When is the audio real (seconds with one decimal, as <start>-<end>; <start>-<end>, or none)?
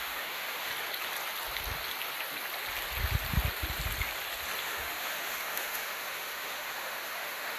0.7-4.6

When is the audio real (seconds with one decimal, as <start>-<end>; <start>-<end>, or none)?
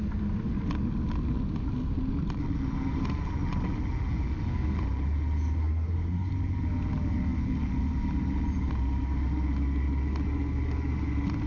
0.0-5.6; 6.3-11.5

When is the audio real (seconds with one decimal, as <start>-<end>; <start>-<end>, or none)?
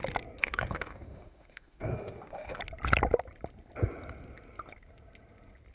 0.0-0.4; 2.6-5.7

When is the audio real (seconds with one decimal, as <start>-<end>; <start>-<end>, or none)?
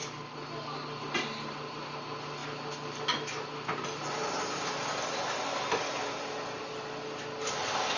0.0-8.0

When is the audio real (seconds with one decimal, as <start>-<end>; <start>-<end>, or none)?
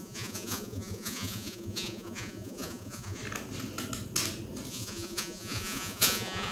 3.2-4.7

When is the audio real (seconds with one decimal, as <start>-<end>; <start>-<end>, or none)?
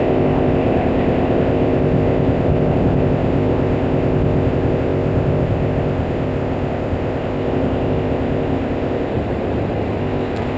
9.1-10.0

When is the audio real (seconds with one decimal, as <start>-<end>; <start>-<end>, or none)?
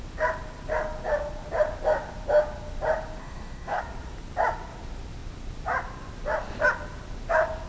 0.0-3.2; 3.8-7.7